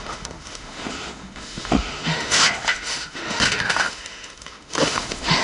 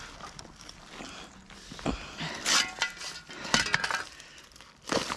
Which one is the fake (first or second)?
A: first